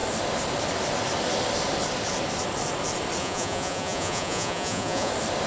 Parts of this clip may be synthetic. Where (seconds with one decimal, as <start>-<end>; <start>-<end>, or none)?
3.2-5.1